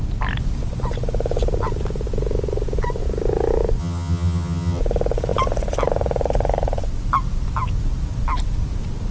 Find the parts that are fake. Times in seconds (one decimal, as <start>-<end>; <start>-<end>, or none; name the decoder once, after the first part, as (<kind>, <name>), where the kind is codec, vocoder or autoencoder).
3.8-4.8 (vocoder, HiFi-GAN)